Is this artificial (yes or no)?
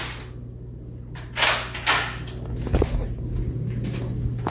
no